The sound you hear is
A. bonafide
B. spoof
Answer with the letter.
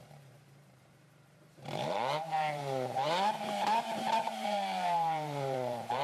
B